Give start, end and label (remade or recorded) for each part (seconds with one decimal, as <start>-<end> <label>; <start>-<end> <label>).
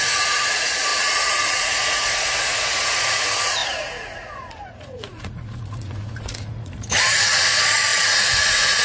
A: 0.0-8.8 remade